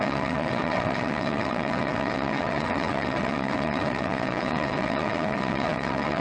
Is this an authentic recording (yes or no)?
no